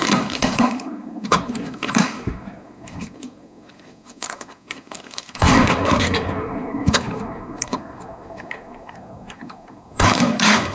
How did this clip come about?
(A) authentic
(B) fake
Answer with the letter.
B